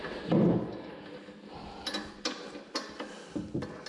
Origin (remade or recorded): recorded